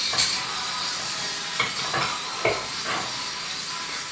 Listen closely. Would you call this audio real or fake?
real